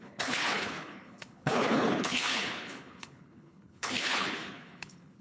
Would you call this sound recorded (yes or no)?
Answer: no